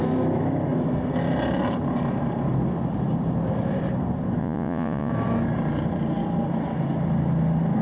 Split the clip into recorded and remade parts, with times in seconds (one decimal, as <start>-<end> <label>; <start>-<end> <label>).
0.0-4.4 recorded; 4.4-5.1 remade; 5.1-7.8 recorded